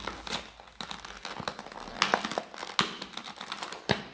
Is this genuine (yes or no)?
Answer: yes